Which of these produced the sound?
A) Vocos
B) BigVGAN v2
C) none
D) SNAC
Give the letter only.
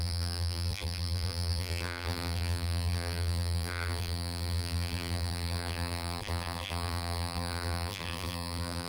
B